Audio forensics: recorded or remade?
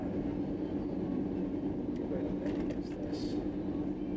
recorded